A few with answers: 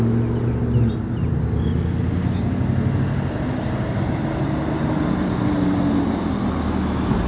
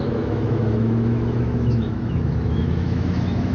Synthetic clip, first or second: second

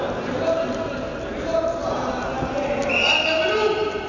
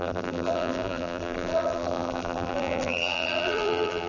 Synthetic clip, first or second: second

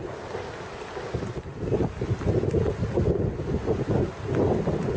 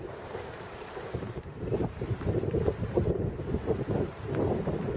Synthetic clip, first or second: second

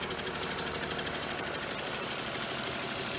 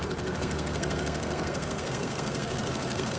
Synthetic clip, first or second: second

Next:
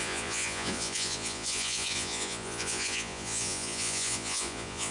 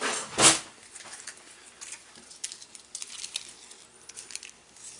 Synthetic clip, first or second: first